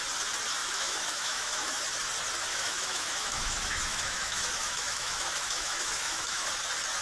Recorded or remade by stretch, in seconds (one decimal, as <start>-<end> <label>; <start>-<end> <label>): 0.0-0.6 recorded; 0.6-1.8 remade; 1.8-2.5 recorded; 2.5-6.5 remade; 6.5-7.0 recorded